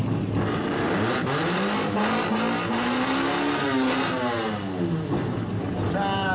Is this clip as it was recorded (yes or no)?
yes